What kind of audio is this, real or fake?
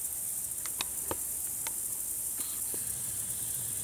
real